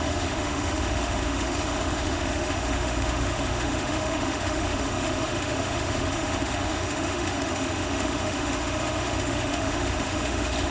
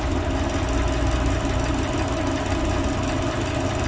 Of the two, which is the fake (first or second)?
first